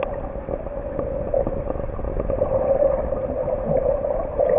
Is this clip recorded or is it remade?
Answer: recorded